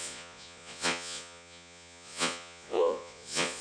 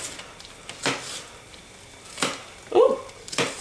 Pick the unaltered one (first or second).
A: second